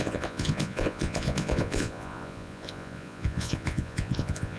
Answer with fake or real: fake